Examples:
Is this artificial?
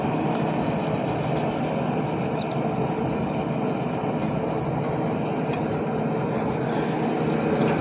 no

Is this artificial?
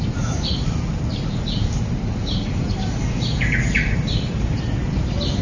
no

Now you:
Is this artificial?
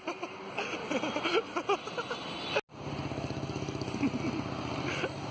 no